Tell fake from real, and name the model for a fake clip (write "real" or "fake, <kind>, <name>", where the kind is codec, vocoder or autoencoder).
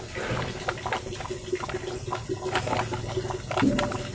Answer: real